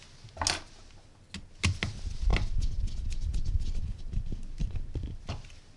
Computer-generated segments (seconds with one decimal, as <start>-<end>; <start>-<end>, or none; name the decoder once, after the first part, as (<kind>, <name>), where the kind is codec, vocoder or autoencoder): none